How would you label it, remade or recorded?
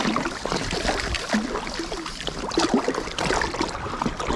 recorded